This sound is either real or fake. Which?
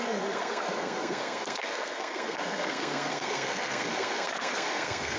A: fake